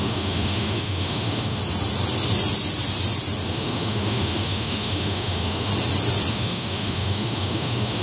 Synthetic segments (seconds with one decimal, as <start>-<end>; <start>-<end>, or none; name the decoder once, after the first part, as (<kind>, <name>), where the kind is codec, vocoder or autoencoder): 0.0-1.6 (autoencoder, DAC-VAE); 3.5-5.7; 6.3-8.0